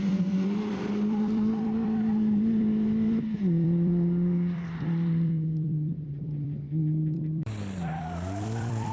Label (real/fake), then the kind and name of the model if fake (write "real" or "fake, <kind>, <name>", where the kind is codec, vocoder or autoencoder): fake, vocoder, BigVGAN v2